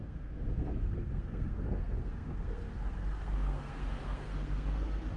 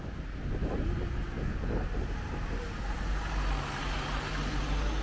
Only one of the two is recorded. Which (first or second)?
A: second